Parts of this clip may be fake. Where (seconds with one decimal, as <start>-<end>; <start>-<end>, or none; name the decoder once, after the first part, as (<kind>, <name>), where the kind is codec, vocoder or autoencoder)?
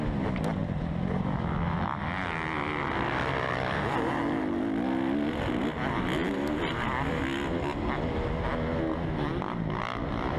none